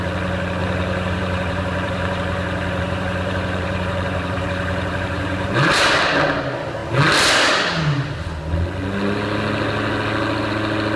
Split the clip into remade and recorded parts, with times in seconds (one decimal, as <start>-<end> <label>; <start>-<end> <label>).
0.0-0.6 recorded; 0.6-5.8 remade; 5.8-11.0 recorded